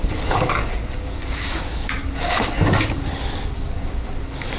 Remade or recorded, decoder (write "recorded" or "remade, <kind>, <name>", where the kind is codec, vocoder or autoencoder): remade, codec, DAC